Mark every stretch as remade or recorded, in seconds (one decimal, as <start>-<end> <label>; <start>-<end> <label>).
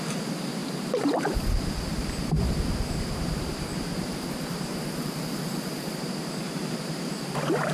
0.0-0.6 recorded; 0.6-1.2 remade; 1.2-1.9 recorded; 1.9-3.5 remade; 3.5-4.7 recorded; 4.7-7.0 remade; 7.0-7.7 recorded